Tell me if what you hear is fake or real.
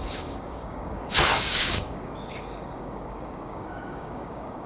fake